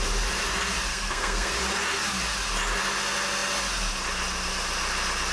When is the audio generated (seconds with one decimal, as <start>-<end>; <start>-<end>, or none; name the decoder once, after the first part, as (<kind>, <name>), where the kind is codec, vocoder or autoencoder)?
0.9-1.5 (codec, SNAC)